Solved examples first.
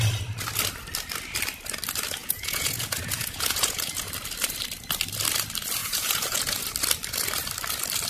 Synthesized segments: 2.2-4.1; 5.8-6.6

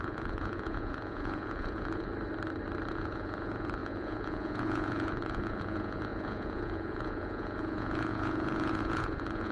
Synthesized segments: 0.0-2.1; 2.9-9.5